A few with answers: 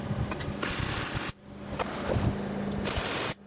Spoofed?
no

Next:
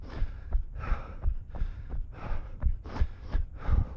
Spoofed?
yes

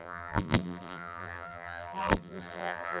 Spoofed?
yes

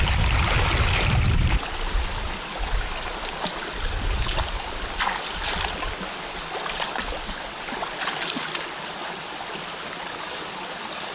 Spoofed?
no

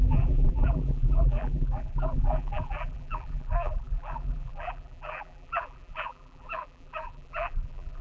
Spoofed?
yes